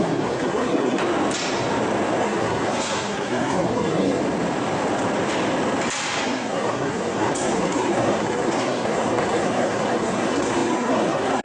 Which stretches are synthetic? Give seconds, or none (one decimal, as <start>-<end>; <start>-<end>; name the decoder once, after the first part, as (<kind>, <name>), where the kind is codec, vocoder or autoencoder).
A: 0.0-1.0 (codec, SNAC); 2.2-4.2; 6.2-11.4